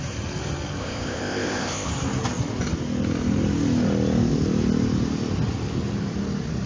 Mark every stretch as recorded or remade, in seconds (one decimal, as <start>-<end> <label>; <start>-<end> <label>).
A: 0.0-0.8 recorded; 0.8-1.9 remade; 1.9-6.7 recorded